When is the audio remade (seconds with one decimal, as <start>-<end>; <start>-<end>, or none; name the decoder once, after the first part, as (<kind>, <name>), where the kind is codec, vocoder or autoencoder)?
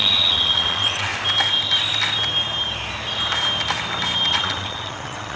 0.0-1.1 (vocoder, WaveNeXt); 4.3-5.4